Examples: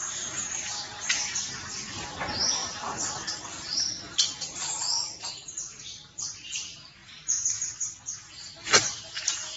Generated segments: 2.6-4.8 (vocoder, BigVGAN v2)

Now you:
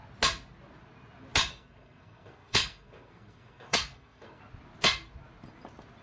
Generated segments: 1.5-4.4 (codec, SNAC)